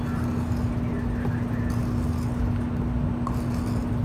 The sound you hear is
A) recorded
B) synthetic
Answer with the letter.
A